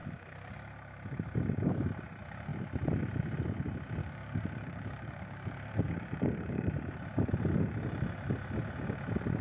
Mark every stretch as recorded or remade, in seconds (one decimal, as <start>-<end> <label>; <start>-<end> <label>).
0.0-0.5 remade; 0.5-4.0 recorded; 4.0-6.7 remade; 6.7-9.4 recorded